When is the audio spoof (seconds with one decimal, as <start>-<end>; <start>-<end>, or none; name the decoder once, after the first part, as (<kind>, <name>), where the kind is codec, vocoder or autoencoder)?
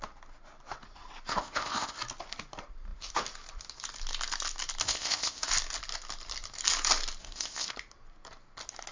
1.3-2.0 (codec, ZipCodec); 4.8-5.5; 7.2-7.7